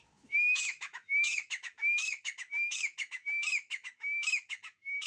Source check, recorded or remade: remade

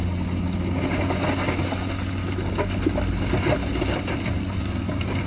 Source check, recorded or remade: recorded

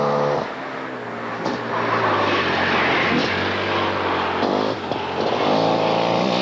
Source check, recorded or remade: recorded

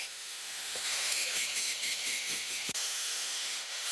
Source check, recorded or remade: remade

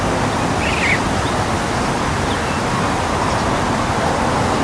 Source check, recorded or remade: recorded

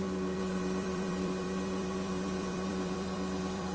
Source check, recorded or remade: remade